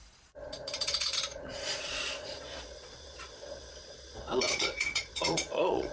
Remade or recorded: remade